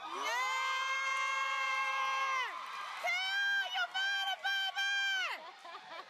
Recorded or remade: recorded